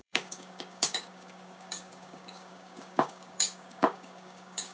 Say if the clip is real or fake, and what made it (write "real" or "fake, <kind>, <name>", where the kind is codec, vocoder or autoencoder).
fake, codec, DAC